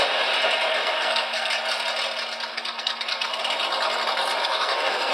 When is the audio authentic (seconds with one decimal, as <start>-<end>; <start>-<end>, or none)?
0.0-0.7; 1.5-2.5; 3.4-4.4